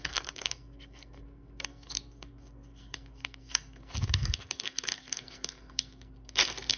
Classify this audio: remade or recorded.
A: remade